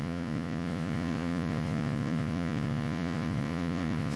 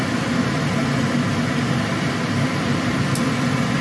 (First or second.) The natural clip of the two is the second